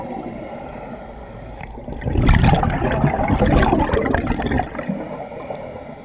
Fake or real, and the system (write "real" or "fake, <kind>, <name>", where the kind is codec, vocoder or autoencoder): real